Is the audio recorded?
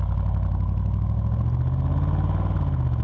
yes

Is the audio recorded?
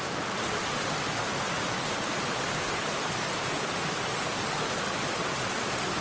yes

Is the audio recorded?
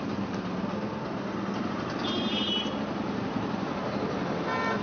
yes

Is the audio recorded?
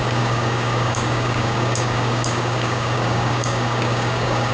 no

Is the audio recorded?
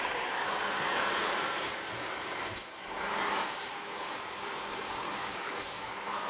no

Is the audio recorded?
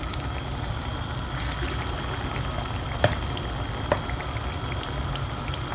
yes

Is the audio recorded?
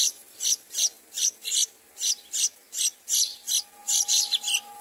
yes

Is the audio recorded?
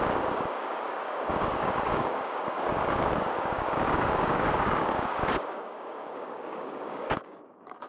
no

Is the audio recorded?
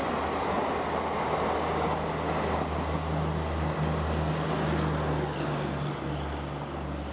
yes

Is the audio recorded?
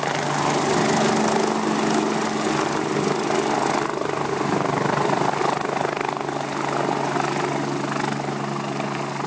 yes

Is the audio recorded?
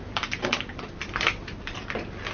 yes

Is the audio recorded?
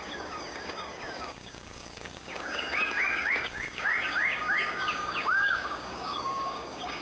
no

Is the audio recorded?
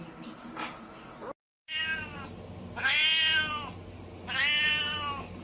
yes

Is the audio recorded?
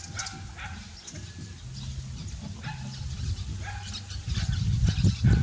yes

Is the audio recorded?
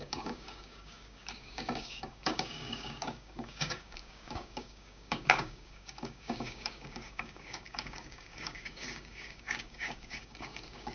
no